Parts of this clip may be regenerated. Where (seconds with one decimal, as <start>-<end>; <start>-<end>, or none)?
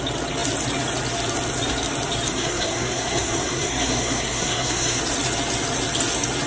2.3-5.0